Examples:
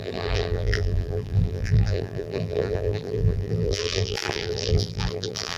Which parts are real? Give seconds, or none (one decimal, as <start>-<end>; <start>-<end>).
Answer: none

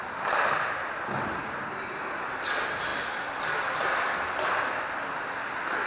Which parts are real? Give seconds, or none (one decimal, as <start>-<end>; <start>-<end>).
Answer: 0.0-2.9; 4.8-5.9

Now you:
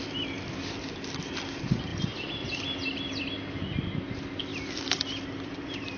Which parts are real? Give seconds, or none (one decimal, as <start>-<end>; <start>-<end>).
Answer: 0.0-1.9; 3.2-4.5

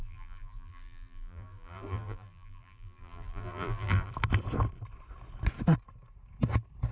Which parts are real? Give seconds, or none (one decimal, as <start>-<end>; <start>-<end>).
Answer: 4.1-6.9

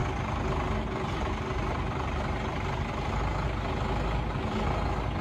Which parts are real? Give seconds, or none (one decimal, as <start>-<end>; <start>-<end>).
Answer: 0.0-5.2

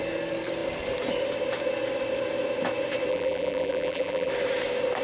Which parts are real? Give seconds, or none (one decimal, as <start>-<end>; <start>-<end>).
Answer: 0.0-3.1; 4.3-5.0